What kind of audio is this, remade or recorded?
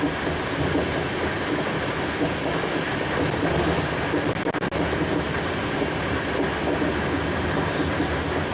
recorded